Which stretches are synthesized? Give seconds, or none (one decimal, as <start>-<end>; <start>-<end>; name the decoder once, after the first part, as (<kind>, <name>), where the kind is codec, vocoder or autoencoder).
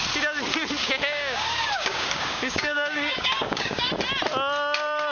0.8-3.9 (codec, DAC)